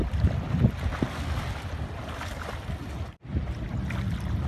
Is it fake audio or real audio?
real